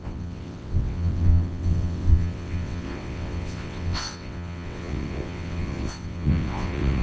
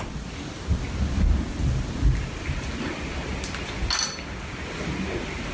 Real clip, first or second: second